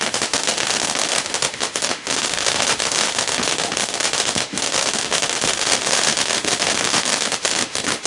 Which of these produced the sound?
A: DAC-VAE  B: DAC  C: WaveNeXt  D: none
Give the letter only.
A